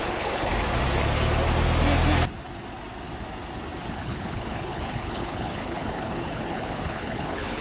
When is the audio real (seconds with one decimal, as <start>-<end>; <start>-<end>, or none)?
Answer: 0.5-3.9